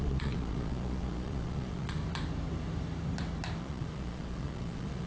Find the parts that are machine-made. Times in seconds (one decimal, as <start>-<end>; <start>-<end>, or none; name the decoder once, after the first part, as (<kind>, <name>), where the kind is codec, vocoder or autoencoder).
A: 0.0-2.0 (vocoder, Vocos); 3.6-5.1